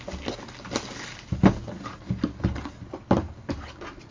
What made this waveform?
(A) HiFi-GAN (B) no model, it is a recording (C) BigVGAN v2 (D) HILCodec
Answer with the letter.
B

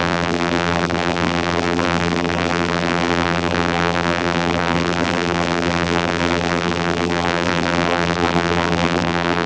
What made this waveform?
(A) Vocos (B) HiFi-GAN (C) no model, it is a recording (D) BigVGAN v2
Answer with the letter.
D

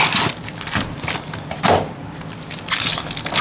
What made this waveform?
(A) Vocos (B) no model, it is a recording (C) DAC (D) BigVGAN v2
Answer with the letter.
B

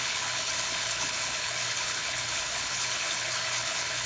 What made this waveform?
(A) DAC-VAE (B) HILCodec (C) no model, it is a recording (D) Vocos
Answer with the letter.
B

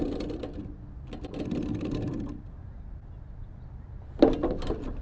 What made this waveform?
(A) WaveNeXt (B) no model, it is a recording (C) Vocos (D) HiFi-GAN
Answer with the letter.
B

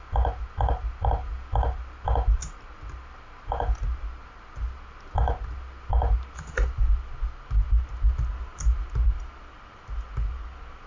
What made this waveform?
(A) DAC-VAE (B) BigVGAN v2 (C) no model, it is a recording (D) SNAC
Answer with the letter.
C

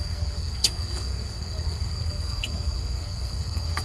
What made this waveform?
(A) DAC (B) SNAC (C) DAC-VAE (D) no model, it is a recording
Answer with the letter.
B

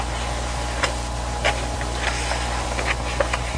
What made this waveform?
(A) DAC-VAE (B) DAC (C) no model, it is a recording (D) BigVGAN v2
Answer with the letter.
C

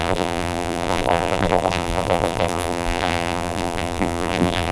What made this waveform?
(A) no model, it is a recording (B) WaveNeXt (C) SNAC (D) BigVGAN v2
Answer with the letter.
D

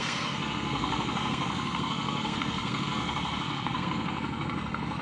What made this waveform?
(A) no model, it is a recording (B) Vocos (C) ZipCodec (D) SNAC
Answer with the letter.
D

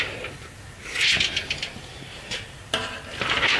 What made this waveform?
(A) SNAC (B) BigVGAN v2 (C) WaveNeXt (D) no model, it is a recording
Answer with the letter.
D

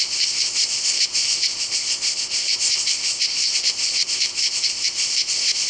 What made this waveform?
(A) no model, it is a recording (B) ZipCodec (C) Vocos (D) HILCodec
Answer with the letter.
B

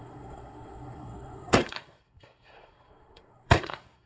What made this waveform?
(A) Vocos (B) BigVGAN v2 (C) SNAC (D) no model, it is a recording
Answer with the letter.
C